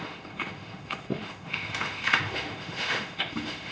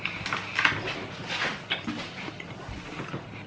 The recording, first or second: second